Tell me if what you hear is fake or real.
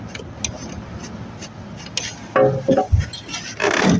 real